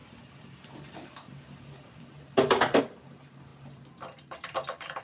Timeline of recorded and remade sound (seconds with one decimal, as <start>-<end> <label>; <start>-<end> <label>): 0.0-5.0 remade